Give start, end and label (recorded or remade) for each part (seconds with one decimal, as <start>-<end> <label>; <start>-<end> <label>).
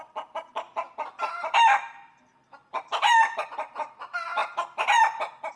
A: 0.0-5.6 recorded